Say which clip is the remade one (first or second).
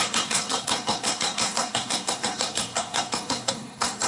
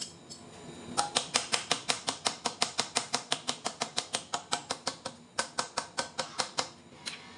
first